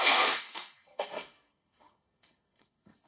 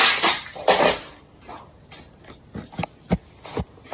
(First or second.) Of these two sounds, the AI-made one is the first